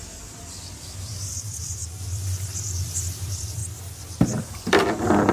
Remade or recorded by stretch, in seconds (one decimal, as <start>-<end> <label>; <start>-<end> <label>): 0.0-3.6 remade; 3.6-4.4 recorded; 4.4-5.3 remade

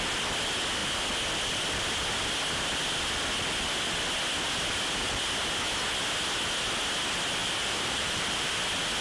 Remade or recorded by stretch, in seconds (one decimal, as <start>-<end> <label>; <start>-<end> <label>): 0.0-7.4 recorded; 7.4-8.5 remade; 8.5-9.0 recorded

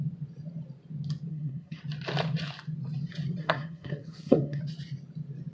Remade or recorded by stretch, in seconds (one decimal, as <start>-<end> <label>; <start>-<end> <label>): 0.0-1.3 recorded; 1.3-1.8 remade; 1.8-3.4 recorded; 3.4-4.6 remade; 4.6-5.5 recorded

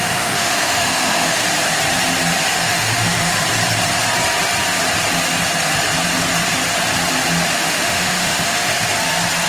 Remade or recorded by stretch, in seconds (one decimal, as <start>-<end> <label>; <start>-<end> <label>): 0.0-1.4 remade; 1.4-2.5 recorded; 2.5-3.3 remade; 3.3-7.5 recorded; 7.5-8.7 remade; 8.7-9.5 recorded